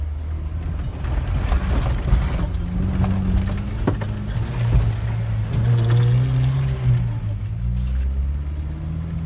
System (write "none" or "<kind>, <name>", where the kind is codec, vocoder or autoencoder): none